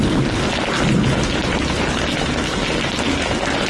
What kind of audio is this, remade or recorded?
recorded